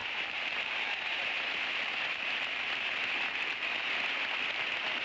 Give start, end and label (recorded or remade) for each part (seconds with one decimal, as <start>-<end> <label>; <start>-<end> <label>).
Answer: 0.0-3.0 remade; 3.0-5.0 recorded